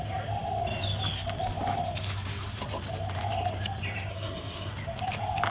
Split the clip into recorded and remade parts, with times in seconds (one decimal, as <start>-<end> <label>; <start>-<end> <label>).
0.0-4.1 recorded; 4.1-4.7 remade; 4.7-5.5 recorded